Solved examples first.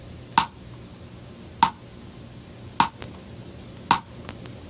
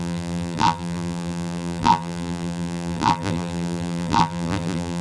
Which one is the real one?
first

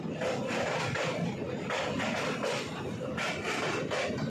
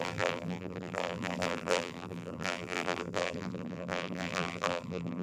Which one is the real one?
first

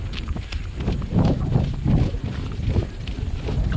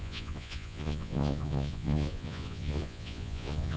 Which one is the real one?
first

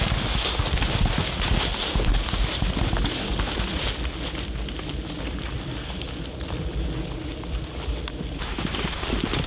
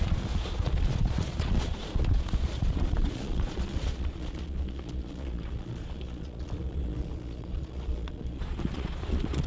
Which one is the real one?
first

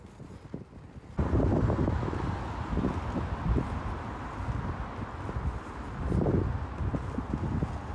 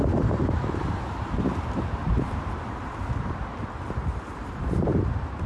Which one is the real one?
first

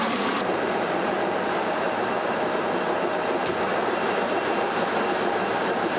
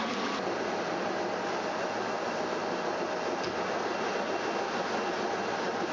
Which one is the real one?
second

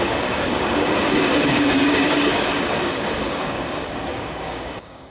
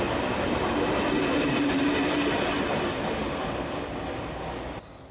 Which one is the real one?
second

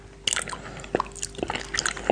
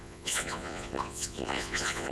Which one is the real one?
first